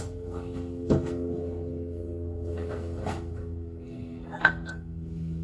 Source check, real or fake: fake